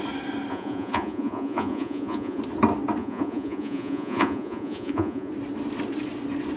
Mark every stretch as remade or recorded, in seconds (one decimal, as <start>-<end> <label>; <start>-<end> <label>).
0.0-0.5 recorded; 0.5-2.4 remade; 2.4-3.0 recorded; 3.0-5.3 remade; 5.3-6.6 recorded